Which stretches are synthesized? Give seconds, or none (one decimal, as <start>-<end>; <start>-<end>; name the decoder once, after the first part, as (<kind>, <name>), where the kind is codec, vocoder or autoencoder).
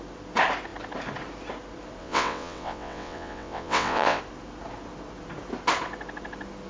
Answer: 2.0-4.2 (vocoder, WaveNeXt)